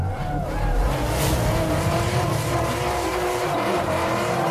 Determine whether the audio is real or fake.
fake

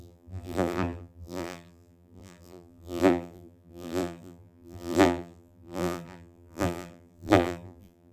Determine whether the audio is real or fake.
fake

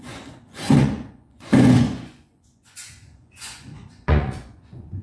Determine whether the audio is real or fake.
fake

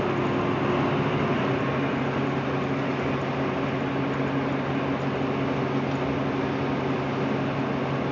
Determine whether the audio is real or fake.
real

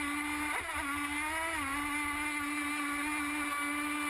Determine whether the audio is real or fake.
real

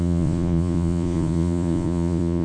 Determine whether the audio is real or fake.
fake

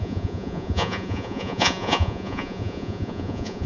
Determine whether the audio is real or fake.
fake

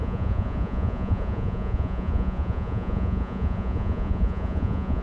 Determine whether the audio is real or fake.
fake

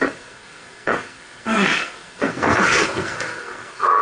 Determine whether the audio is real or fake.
fake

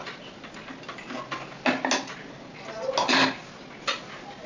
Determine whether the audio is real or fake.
real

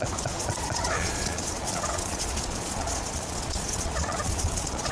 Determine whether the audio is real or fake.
fake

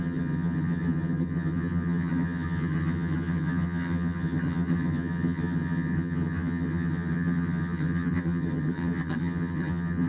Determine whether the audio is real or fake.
fake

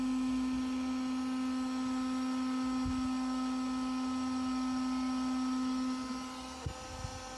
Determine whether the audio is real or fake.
real